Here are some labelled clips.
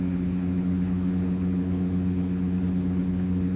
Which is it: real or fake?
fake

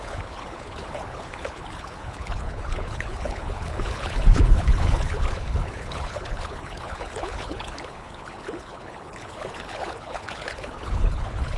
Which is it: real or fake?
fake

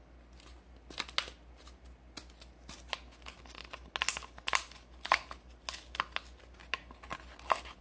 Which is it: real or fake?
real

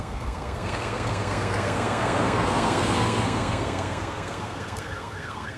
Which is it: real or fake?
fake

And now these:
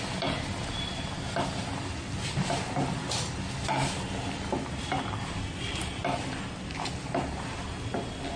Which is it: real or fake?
real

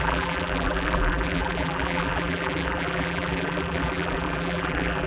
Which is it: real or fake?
fake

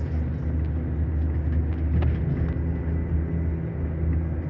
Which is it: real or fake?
real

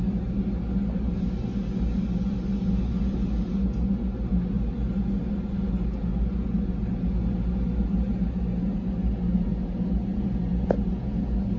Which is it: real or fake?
real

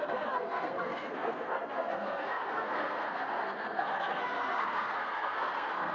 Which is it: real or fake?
fake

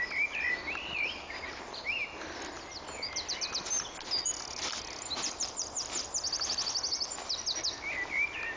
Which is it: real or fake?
real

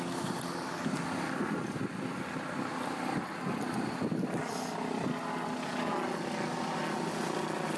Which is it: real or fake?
real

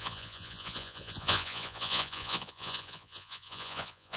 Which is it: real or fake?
fake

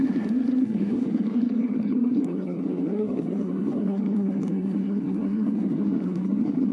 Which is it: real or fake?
fake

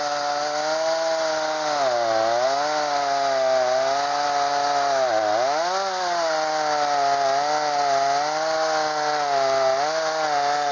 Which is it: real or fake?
real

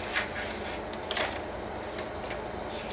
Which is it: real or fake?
real